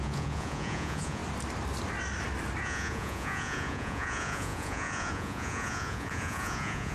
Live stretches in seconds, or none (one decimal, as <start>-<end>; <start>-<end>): 1.2-2.6